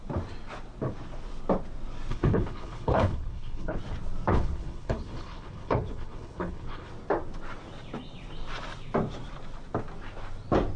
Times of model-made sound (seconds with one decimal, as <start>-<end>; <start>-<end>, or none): 2.1-3.8; 4.3-6.9